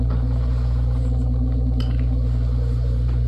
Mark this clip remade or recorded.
remade